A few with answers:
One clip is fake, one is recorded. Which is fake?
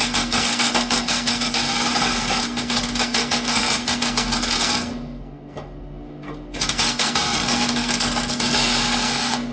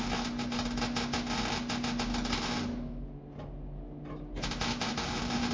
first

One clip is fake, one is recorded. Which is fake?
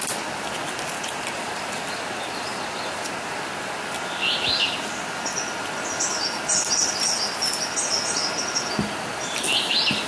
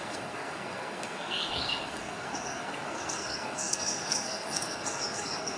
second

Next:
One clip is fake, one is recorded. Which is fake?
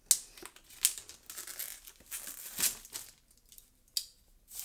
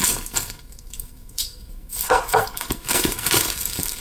second